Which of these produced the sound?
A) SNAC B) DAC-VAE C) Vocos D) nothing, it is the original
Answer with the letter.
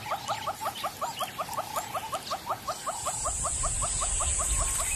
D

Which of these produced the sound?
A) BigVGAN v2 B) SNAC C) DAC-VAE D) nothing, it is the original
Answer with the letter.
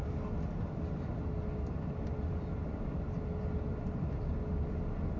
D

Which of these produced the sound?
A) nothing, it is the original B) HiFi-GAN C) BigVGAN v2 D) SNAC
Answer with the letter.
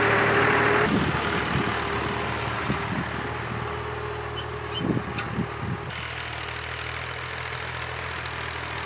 A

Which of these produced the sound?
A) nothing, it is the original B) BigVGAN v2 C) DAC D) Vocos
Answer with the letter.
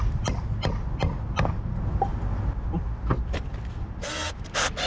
A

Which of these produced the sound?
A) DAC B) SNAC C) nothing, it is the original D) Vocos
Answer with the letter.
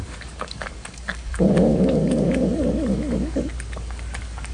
A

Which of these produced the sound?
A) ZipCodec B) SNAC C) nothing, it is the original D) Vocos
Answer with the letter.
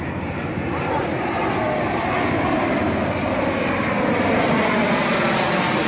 C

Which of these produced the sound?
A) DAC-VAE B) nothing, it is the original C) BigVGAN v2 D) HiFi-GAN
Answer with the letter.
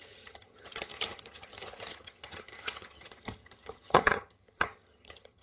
D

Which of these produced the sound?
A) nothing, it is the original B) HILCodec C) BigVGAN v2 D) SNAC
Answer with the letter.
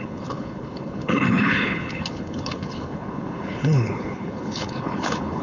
B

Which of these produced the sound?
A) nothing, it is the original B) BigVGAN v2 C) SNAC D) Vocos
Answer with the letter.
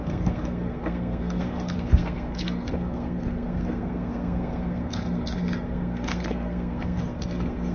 C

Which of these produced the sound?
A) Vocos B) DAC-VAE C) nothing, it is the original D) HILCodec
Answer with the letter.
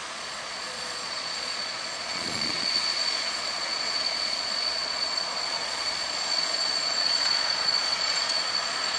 A